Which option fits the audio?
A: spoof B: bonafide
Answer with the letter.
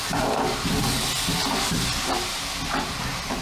B